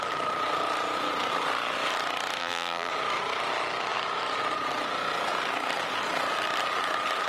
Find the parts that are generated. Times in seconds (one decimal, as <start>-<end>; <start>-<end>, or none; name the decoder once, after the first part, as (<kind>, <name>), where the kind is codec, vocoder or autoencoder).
2.4-2.9 (vocoder, BigVGAN v2)